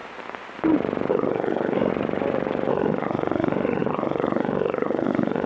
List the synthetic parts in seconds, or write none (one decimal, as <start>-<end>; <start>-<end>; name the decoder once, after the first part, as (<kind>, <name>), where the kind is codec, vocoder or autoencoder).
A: 1.1-1.9 (codec, SNAC); 2.7-5.5